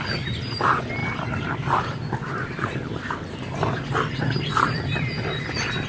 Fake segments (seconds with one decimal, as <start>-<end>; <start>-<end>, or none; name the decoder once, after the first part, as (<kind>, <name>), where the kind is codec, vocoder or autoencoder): none